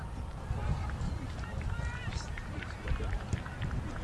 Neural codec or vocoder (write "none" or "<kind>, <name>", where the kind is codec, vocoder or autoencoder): vocoder, BigVGAN v2